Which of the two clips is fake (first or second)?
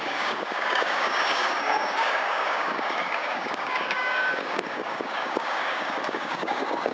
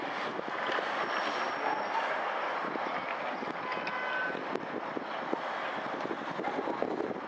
first